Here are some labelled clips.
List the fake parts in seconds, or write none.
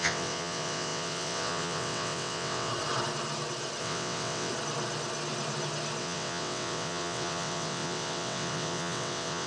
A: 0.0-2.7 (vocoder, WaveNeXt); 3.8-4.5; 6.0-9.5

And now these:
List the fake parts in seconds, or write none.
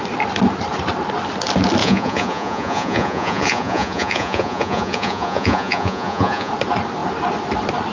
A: 1.8-6.5 (vocoder, Vocos)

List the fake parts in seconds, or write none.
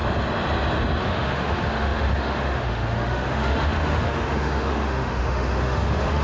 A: 1.0-6.2 (autoencoder, DAC-VAE)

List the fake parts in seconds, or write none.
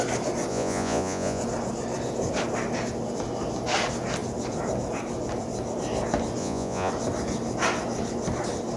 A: 0.5-1.4 (vocoder, Vocos); 6.4-6.9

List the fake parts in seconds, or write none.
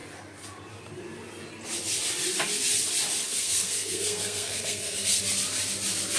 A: 3.2-5.2 (codec, SNAC)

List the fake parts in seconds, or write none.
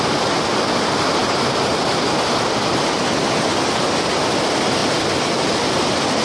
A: 1.2-2.5 (vocoder, BigVGAN v2)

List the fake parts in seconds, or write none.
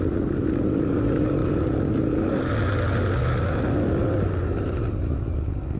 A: 0.0-1.4 (vocoder, BigVGAN v2); 4.9-5.8